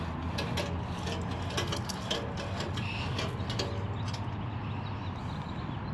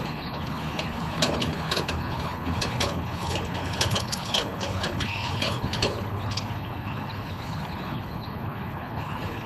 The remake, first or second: second